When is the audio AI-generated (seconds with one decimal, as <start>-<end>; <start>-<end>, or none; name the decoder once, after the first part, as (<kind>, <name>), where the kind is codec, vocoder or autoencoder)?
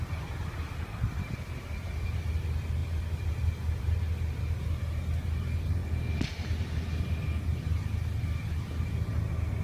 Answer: none